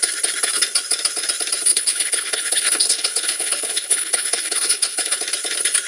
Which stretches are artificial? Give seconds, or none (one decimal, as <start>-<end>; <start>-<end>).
1.7-5.2

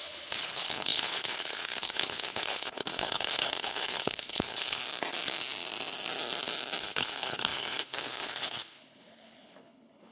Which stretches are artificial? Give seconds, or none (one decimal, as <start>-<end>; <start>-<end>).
0.0-4.8; 6.8-10.1

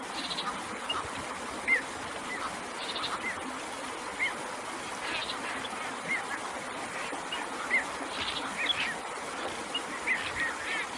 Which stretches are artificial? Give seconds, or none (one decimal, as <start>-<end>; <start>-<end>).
none

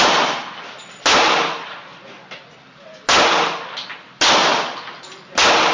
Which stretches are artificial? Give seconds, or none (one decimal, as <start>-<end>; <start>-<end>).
none

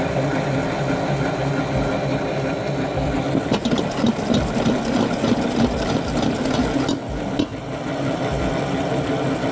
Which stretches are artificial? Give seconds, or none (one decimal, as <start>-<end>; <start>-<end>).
none

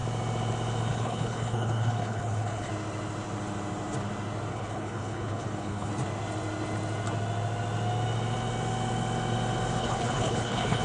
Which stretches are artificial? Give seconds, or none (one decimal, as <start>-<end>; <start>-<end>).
0.9-2.7; 4.5-5.9; 9.8-10.8

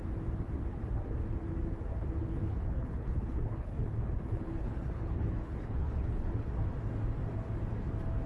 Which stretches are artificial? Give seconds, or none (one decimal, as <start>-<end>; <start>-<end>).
2.2-6.5